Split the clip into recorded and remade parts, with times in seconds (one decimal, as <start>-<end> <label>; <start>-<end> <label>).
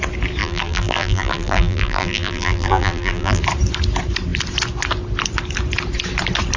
0.0-0.4 recorded; 0.4-3.4 remade; 3.4-6.6 recorded